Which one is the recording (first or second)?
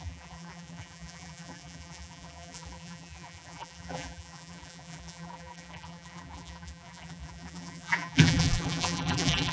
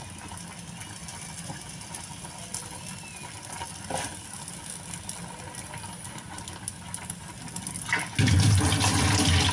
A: second